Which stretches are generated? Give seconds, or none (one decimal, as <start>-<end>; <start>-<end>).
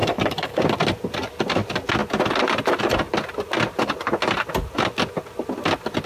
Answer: 0.0-0.6